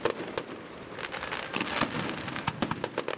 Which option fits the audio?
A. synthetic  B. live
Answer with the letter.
B